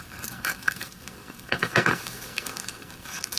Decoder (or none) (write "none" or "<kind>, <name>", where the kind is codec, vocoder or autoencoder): codec, SNAC